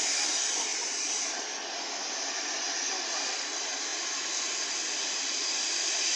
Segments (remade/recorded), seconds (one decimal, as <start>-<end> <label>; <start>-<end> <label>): 0.0-6.2 recorded